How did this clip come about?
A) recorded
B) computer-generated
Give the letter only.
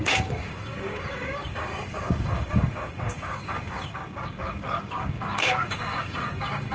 B